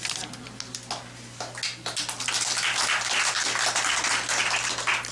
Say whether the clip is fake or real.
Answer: real